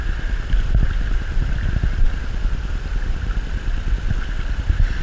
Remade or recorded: recorded